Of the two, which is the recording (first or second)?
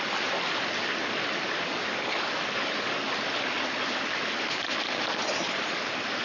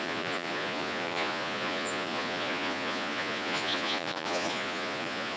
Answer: first